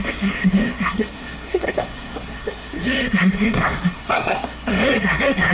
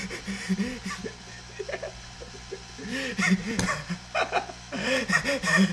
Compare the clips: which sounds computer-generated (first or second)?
first